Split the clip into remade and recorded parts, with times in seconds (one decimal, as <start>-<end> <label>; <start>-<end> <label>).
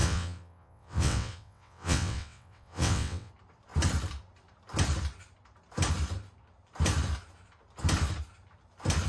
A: 0.0-3.3 remade; 3.3-9.1 recorded